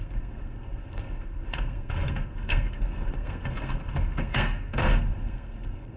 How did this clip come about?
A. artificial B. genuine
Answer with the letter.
A